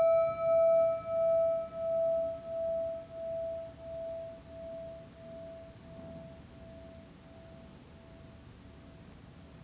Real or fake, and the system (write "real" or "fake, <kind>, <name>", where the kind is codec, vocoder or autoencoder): real